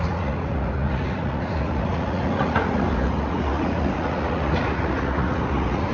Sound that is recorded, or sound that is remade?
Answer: remade